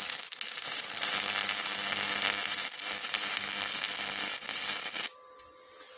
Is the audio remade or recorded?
recorded